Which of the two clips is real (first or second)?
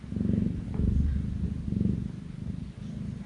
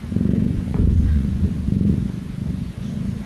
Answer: first